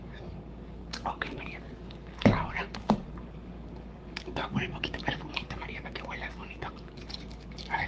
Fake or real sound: fake